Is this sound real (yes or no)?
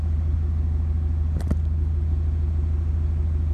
yes